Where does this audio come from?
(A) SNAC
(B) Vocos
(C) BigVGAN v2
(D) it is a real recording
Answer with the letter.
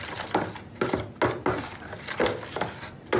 D